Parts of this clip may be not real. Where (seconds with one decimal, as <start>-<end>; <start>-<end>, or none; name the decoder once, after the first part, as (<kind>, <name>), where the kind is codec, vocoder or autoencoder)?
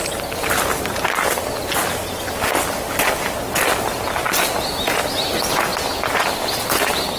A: none